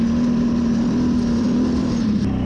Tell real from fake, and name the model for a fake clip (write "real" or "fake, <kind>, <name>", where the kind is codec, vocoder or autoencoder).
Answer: fake, vocoder, BigVGAN v2